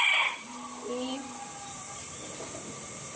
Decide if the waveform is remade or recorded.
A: recorded